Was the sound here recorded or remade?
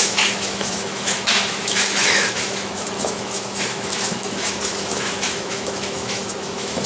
remade